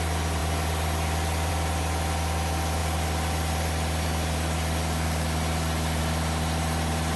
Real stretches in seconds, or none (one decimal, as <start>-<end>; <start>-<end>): 0.0-7.2